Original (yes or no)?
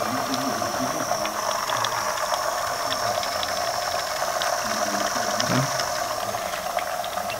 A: yes